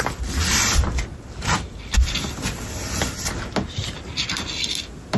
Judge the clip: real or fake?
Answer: real